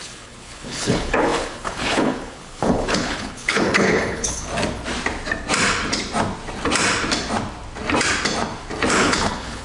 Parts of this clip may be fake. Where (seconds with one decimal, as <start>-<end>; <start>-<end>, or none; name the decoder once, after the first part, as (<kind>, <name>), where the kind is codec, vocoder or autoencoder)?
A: 0.0-4.5 (codec, HILCodec); 8.9-9.6